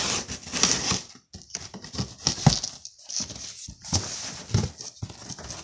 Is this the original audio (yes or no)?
yes